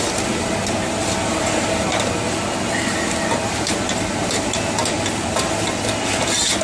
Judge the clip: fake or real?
real